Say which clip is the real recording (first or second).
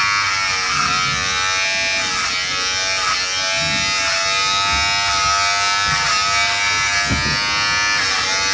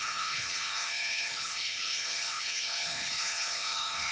first